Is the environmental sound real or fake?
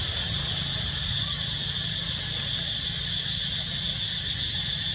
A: real